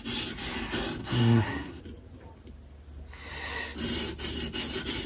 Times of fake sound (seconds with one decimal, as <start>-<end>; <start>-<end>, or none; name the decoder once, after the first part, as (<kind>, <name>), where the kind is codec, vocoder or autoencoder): 1.0-1.8 (codec, SNAC)